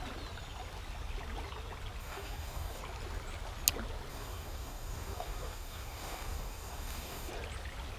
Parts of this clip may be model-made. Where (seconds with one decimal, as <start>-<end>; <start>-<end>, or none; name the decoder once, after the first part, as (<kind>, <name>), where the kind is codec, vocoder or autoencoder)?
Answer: 2.0-2.8 (codec, DAC); 4.1-7.3